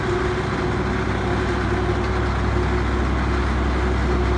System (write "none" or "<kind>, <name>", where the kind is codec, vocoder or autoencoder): none